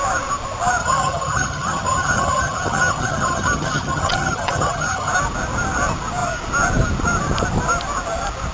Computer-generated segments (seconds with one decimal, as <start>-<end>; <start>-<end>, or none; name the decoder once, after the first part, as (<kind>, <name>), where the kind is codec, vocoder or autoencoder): 0.8-5.1 (vocoder, HiFi-GAN)